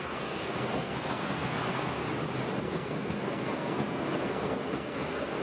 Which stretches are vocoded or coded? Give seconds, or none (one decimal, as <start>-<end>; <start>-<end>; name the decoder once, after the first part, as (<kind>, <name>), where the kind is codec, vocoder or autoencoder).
0.0-2.0 (codec, SNAC); 2.6-5.4